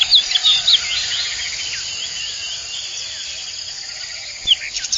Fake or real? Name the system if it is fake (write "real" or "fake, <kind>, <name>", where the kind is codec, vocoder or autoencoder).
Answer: real